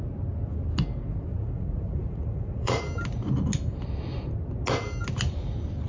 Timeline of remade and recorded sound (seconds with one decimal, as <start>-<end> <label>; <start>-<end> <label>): 0.0-1.3 recorded; 1.3-2.8 remade; 2.8-5.9 recorded

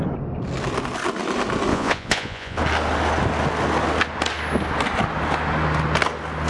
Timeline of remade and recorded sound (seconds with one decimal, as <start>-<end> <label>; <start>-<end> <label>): 0.0-1.7 recorded; 1.7-2.6 remade; 2.6-6.5 recorded

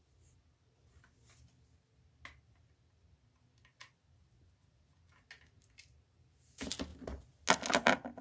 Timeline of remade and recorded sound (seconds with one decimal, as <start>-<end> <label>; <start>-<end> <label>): 0.0-8.2 recorded

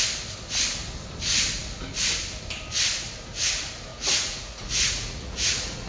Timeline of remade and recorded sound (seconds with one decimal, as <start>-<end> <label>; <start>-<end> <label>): 0.0-3.9 recorded; 3.9-5.9 remade

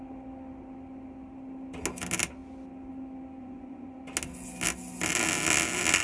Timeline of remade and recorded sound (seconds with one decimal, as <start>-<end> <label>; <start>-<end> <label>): 0.0-3.4 recorded; 3.4-4.0 remade; 4.0-6.0 recorded